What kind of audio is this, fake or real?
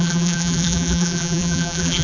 fake